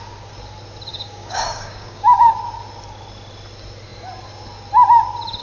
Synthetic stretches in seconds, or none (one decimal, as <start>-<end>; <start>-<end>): 0.9-2.3